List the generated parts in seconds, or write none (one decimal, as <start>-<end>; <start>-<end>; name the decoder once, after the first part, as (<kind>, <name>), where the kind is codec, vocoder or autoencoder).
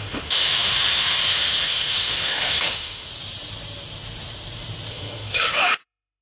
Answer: 0.0-3.1 (autoencoder, DAC-VAE); 4.9-6.2